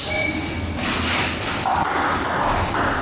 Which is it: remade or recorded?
recorded